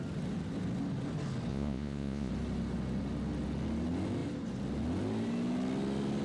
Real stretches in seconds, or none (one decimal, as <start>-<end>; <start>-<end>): 0.0-1.5; 2.3-6.2